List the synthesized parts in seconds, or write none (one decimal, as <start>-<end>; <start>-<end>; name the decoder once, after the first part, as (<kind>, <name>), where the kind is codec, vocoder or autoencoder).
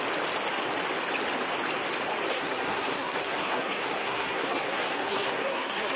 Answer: 2.3-6.0 (codec, SNAC)